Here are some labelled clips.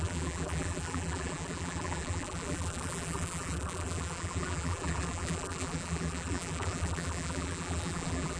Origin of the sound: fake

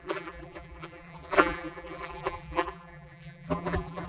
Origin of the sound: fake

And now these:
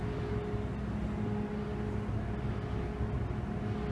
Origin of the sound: real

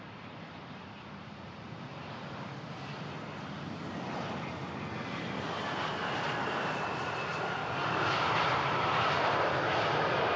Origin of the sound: real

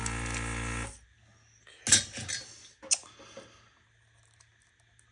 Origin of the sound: real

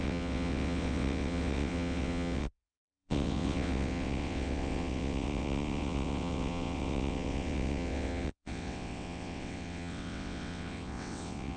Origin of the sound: fake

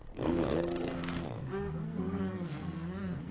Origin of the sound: fake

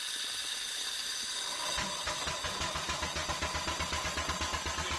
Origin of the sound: real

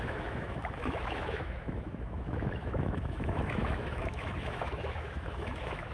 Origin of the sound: fake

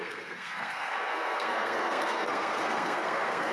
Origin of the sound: fake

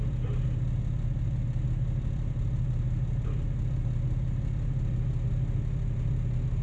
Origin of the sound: real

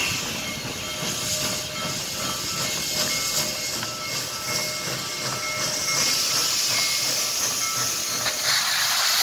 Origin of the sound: real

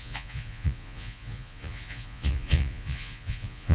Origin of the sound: fake